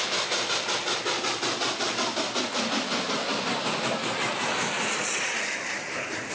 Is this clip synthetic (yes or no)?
no